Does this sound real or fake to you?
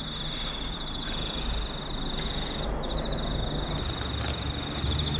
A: real